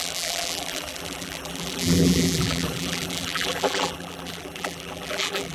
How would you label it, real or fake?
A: fake